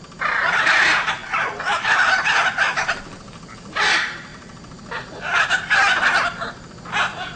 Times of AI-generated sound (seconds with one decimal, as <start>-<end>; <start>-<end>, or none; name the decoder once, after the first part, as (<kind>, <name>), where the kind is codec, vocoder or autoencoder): 1.2-3.0 (vocoder, BigVGAN v2); 4.3-6.4